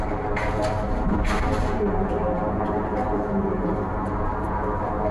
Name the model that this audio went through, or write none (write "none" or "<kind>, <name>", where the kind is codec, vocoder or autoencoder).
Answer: vocoder, BigVGAN v2